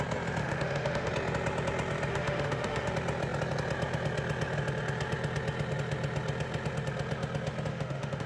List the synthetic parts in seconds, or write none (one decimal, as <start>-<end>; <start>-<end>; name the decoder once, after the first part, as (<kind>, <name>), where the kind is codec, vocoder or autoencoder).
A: 0.4-1.1 (autoencoder, DAC-VAE); 2.1-2.9; 7.7-8.3